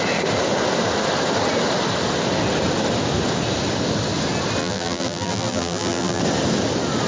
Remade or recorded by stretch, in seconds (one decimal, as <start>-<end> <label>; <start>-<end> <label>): 0.0-4.6 recorded; 4.6-6.2 remade; 6.2-7.1 recorded

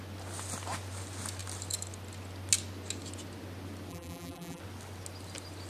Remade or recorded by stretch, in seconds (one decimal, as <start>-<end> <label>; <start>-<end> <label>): 0.0-3.9 recorded; 3.9-4.6 remade; 4.6-5.7 recorded

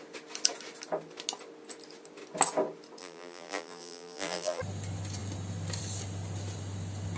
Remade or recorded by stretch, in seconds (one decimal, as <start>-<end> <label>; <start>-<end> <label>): 0.0-3.0 recorded; 3.0-4.6 remade; 4.6-7.2 recorded

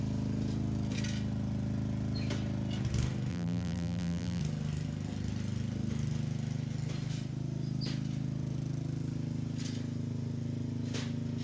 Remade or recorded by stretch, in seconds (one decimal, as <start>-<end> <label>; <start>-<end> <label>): 0.0-3.3 recorded; 3.3-4.4 remade; 4.4-11.4 recorded

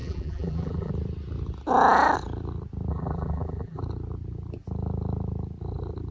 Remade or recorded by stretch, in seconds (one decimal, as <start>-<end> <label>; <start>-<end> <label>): 0.0-0.9 remade; 0.9-2.9 recorded; 2.9-3.8 remade; 3.8-6.1 recorded

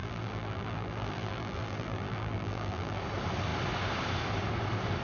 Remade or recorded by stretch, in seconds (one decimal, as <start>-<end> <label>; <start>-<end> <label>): 0.0-3.0 remade; 3.0-5.0 recorded

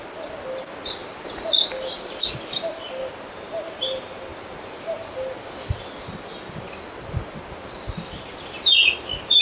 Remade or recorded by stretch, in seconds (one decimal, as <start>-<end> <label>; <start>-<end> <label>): 0.0-9.4 recorded